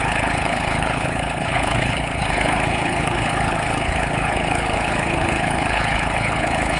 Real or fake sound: fake